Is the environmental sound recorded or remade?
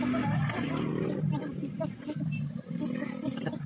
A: recorded